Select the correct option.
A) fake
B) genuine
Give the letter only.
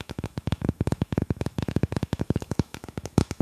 A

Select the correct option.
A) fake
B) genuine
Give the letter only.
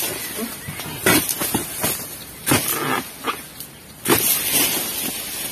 B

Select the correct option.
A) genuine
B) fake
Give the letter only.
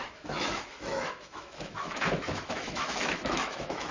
B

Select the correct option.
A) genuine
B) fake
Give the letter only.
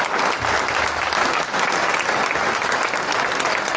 A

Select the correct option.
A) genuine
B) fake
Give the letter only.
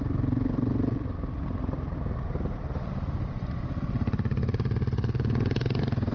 A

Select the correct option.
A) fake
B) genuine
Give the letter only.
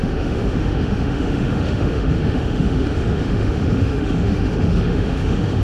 A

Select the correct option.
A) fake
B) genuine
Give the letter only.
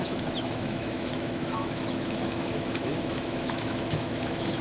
A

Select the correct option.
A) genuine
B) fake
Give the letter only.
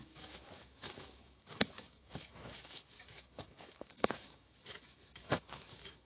B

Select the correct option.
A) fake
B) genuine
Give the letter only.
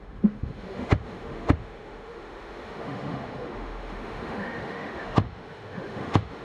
A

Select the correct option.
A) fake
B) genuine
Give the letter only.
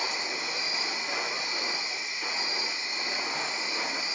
B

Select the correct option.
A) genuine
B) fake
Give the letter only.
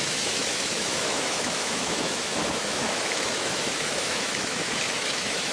B